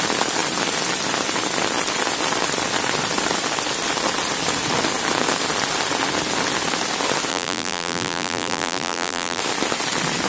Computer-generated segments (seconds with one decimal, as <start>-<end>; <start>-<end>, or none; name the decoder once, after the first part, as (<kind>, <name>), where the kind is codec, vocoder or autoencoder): 7.3-9.4 (vocoder, BigVGAN v2)